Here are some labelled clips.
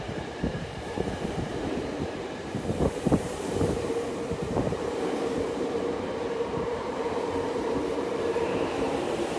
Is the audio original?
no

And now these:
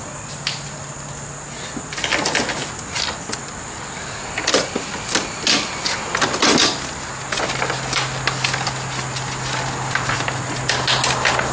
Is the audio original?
yes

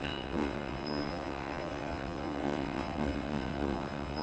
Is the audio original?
no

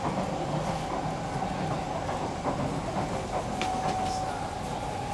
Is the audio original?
yes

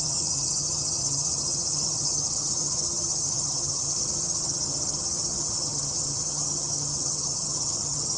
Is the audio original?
no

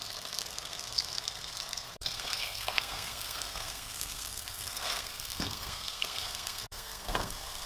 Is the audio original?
no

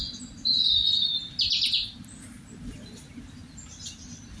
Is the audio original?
yes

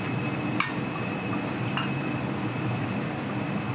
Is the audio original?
yes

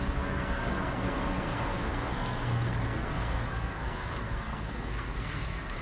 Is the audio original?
no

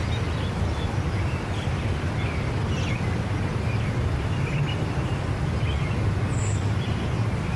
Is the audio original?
yes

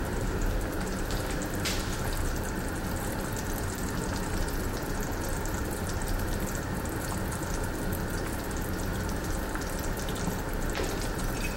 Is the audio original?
yes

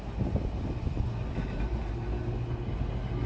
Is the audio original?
yes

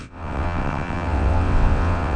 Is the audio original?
no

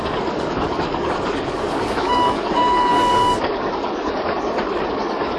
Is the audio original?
no